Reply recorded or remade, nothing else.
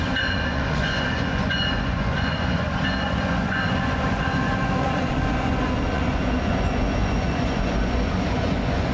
remade